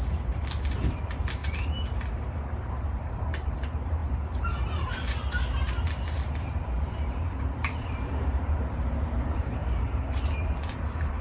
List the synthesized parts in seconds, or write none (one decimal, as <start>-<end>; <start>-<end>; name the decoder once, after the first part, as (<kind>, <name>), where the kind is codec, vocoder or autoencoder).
0.0-1.4 (vocoder, BigVGAN v2); 2.7-9.6; 10.1-11.2